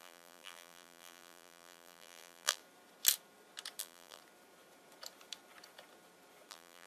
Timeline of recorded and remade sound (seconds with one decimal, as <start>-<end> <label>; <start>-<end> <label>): 0.0-2.6 remade; 2.6-3.8 recorded; 3.8-4.2 remade; 4.2-6.5 recorded; 6.5-6.9 remade